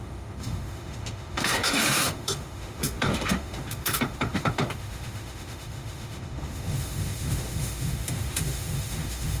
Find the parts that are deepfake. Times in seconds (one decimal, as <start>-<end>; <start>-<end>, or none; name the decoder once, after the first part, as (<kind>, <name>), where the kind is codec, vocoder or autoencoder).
0.0-9.4 (autoencoder, DAC-VAE)